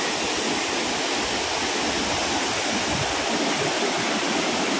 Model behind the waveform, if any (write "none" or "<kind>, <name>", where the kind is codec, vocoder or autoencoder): none